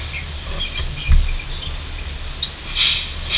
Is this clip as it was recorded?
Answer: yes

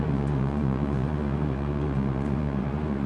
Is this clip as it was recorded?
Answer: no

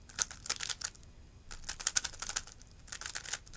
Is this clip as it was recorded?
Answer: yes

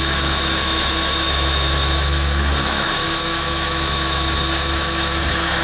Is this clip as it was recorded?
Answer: no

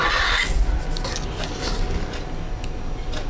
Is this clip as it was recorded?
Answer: yes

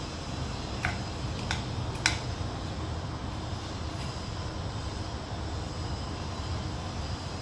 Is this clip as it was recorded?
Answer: yes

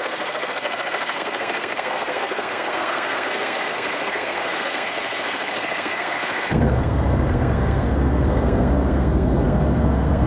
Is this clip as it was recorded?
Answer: no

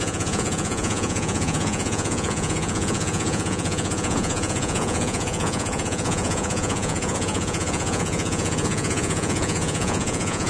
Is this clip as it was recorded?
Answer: no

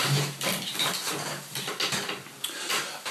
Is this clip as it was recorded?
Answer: yes